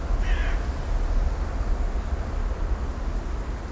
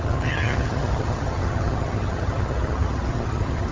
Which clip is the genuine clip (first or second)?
first